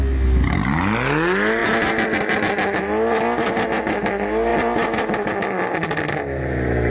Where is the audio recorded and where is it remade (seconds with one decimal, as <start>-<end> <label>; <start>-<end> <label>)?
0.0-6.9 recorded